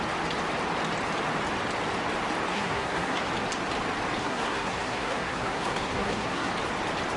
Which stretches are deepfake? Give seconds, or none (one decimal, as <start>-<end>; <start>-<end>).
2.5-3.3; 4.2-6.5